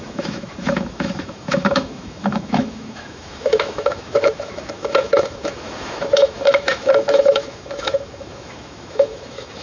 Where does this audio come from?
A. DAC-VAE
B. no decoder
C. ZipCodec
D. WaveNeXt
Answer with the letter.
A